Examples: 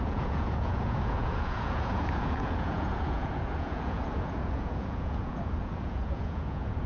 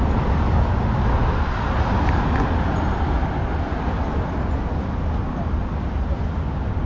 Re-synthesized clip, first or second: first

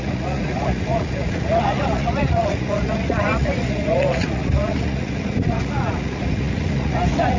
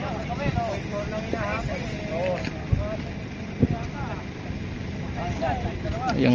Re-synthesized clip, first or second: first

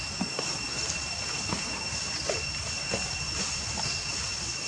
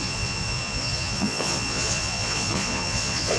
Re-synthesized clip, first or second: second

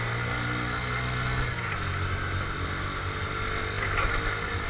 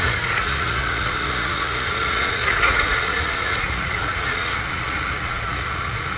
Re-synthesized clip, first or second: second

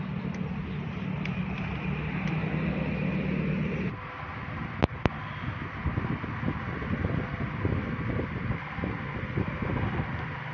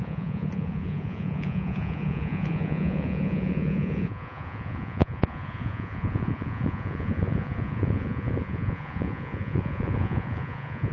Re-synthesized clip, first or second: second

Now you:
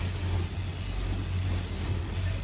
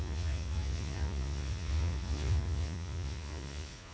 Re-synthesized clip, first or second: second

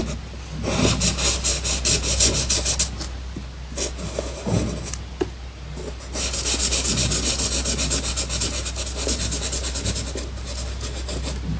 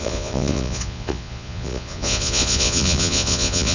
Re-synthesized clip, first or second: second